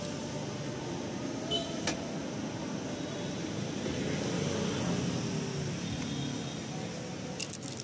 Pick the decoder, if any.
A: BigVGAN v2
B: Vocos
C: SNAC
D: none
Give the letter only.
D